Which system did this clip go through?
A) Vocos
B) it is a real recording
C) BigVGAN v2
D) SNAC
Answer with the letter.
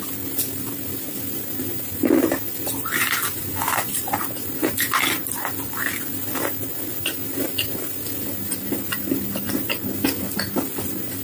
B